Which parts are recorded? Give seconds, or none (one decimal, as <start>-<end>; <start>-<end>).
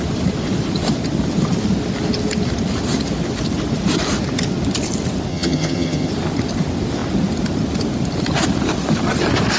0.0-5.3; 6.1-9.6